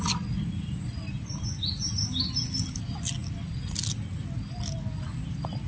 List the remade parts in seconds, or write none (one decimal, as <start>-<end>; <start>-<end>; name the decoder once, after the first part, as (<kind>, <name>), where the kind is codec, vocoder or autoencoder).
none